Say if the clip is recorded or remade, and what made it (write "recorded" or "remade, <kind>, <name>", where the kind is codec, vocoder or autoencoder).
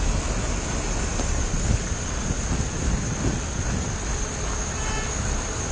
recorded